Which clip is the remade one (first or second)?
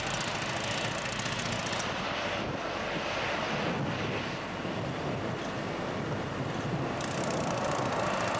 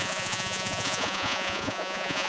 second